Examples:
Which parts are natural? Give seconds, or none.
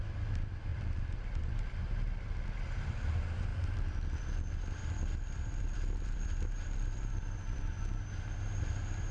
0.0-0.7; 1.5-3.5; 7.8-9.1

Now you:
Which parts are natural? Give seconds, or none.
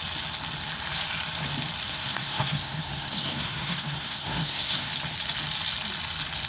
0.0-1.9; 4.9-6.5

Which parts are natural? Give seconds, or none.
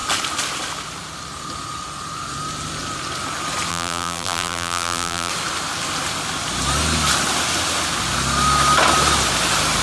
0.0-3.7; 5.3-9.8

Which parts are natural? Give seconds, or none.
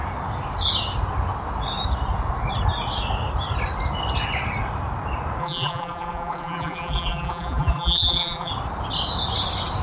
0.0-5.4; 8.5-9.8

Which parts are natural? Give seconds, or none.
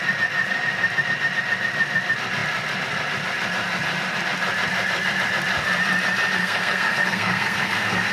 0.0-6.4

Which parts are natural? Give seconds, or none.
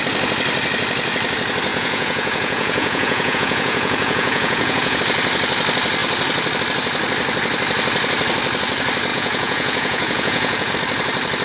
0.0-1.7; 5.0-9.1; 10.7-11.4